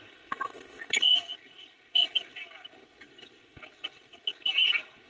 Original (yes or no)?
yes